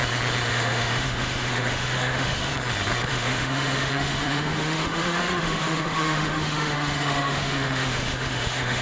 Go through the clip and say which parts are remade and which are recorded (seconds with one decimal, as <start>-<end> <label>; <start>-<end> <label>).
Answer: 0.0-0.5 recorded; 0.5-2.5 remade; 2.5-3.1 recorded; 3.1-8.8 remade